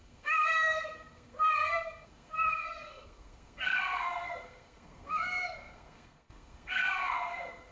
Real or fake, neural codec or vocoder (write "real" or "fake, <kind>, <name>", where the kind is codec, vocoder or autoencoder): fake, codec, SNAC